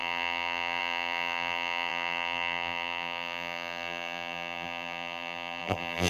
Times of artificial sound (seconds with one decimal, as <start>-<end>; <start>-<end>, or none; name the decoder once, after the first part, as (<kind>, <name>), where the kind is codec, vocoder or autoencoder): 0.0-6.1 (vocoder, BigVGAN v2)